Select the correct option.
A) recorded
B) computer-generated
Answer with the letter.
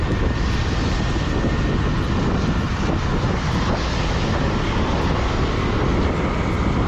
A